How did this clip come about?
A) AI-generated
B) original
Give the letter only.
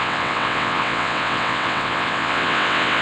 A